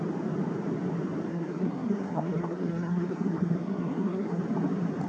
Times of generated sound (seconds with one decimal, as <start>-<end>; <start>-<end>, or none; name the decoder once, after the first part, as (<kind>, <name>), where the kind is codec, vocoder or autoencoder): 1.3-4.4 (codec, SNAC)